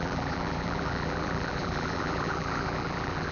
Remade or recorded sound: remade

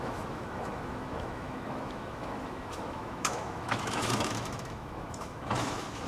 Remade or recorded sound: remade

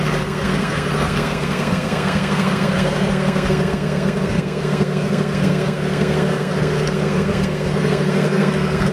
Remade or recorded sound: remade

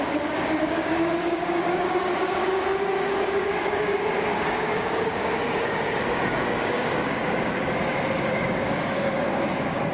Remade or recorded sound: remade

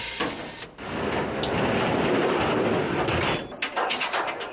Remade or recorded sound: recorded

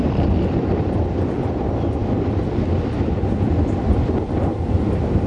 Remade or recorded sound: recorded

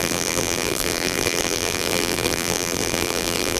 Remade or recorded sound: remade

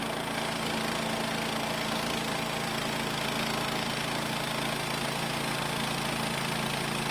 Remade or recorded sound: recorded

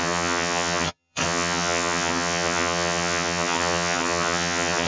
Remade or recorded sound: remade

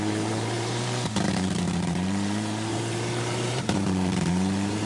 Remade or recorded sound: remade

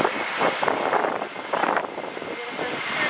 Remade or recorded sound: recorded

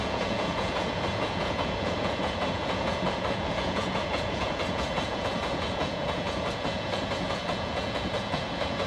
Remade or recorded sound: remade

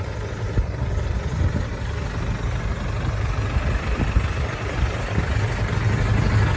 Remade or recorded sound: recorded